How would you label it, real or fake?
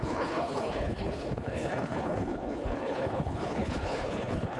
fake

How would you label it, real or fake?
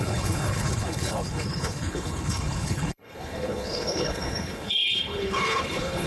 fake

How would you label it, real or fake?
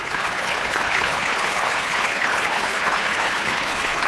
fake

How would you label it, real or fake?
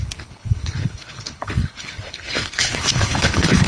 fake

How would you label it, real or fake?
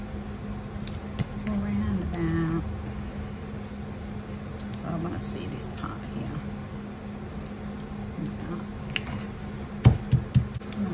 real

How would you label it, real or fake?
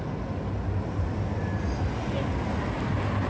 real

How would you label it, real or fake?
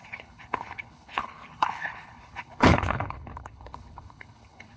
fake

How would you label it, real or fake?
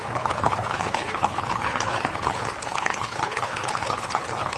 fake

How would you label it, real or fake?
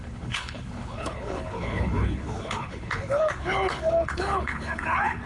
fake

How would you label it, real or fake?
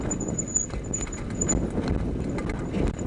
real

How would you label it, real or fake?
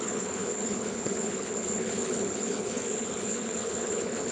fake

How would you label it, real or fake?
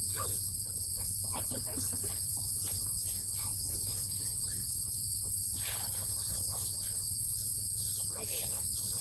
fake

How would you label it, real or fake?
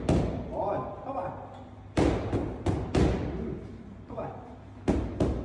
real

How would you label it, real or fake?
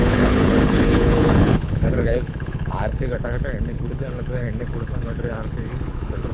fake